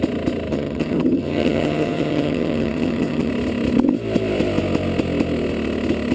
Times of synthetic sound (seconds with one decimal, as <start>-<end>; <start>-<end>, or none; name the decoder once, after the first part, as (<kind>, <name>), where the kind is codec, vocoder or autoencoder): 0.5-3.3 (vocoder, HiFi-GAN)